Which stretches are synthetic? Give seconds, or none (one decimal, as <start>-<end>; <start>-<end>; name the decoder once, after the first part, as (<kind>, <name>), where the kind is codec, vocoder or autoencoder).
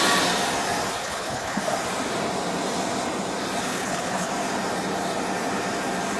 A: 1.0-1.6 (codec, HILCodec); 3.6-4.3